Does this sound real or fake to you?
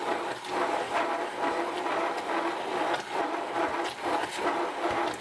real